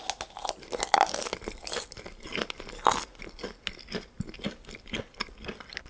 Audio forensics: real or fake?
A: real